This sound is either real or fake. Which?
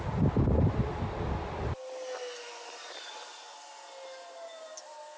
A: real